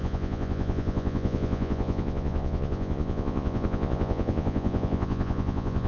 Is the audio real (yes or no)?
no